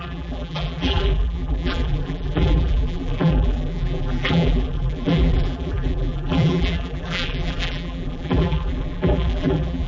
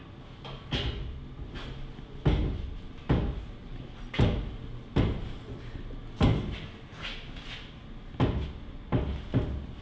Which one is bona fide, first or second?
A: second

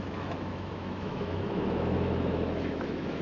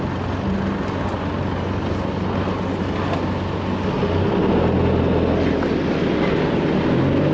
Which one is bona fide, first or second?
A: second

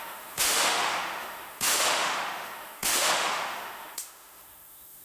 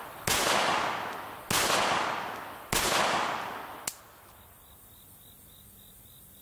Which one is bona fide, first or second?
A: second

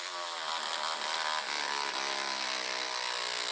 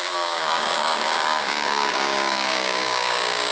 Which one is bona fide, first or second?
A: first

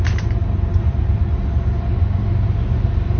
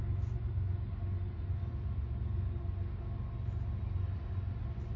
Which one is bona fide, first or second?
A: second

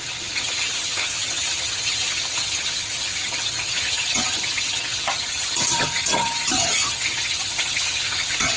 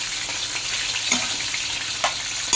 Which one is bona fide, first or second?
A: second